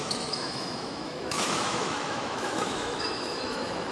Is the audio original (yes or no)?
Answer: no